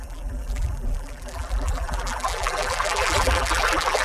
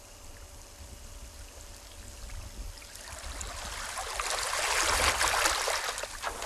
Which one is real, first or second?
second